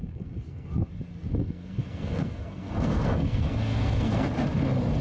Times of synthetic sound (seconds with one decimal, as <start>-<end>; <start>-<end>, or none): 0.0-0.9; 1.3-4.3